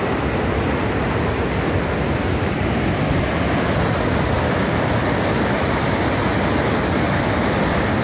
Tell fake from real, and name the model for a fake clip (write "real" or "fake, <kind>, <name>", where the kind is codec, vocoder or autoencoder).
real